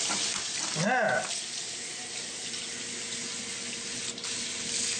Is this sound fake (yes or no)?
no